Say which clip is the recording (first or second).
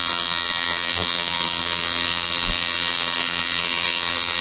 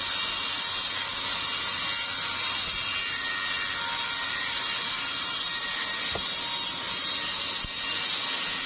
second